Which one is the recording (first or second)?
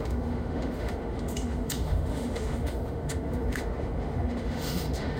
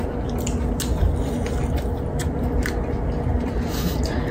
second